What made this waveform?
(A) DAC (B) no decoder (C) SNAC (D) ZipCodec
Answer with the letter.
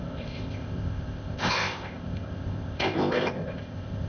D